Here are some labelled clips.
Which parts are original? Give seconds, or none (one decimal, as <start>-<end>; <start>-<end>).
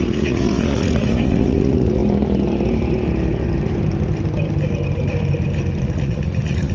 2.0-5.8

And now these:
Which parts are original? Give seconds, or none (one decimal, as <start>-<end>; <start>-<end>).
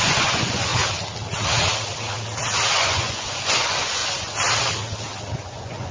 0.7-2.7; 4.0-5.4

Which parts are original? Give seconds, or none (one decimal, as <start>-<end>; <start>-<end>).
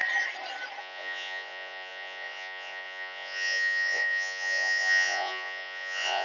0.0-0.8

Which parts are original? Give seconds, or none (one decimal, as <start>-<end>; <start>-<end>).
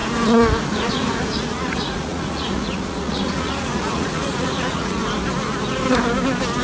0.0-0.7; 5.0-6.6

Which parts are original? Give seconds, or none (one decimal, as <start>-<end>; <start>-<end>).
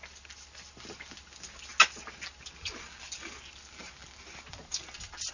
0.0-5.3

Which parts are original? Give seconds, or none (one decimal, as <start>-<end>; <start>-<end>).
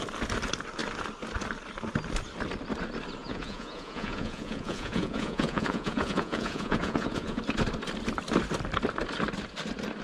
0.0-3.2; 7.4-10.0